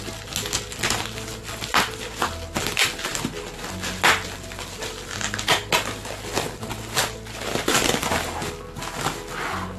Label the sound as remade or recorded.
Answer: recorded